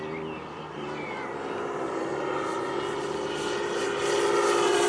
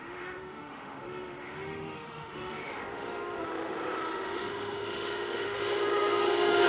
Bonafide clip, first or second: first